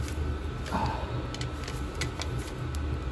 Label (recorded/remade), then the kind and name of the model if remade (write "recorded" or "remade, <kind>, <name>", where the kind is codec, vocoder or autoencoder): recorded